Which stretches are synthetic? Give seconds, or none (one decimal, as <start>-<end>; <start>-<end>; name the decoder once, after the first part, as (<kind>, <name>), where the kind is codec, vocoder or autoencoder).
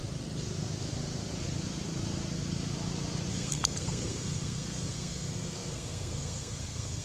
3.3-7.0 (codec, SNAC)